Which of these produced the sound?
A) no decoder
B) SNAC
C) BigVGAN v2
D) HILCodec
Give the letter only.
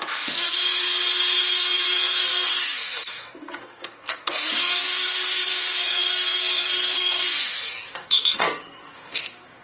B